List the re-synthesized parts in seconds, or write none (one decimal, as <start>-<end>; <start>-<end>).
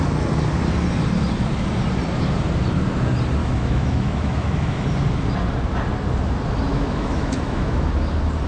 3.4-4.8; 6.7-7.9